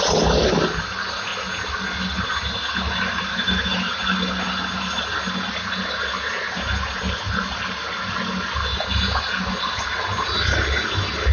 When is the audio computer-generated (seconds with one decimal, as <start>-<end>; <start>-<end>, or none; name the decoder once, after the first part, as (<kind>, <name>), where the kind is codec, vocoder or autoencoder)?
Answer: 3.3-3.9 (autoencoder, DAC-VAE)